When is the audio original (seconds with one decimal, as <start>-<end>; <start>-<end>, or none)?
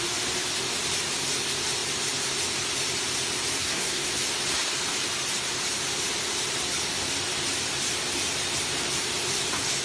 0.0-3.6; 4.1-9.8